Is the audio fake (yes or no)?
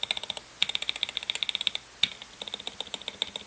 no